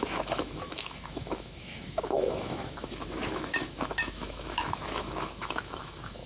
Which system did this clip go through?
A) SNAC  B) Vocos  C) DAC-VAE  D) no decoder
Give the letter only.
C